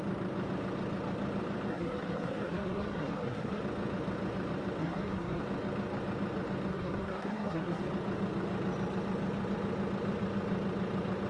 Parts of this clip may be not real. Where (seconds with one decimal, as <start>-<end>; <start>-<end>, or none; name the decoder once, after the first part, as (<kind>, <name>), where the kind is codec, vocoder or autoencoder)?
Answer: 1.7-3.6 (codec, SNAC); 4.8-5.4; 6.7-7.8